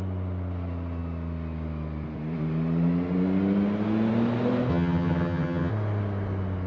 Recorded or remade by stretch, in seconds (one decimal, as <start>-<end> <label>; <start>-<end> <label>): 0.0-4.7 recorded; 4.7-5.7 remade; 5.7-6.7 recorded